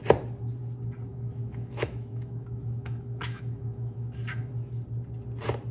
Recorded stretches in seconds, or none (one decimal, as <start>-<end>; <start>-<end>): 0.0-1.1; 4.5-5.7